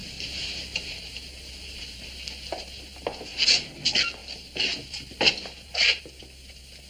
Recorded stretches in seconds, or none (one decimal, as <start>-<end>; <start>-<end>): 3.7-4.2; 6.0-6.9